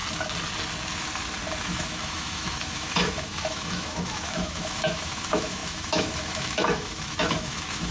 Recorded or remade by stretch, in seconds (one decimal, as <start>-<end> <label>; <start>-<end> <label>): 0.0-1.6 recorded; 1.6-7.9 remade